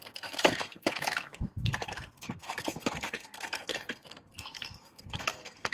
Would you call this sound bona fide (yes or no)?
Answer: no